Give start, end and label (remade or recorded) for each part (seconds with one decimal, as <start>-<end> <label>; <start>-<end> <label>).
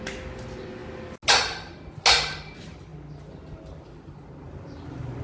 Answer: 0.0-5.2 recorded